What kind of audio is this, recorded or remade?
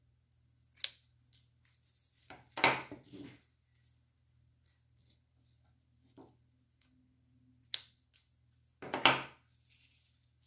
recorded